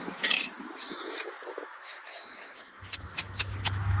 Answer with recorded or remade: remade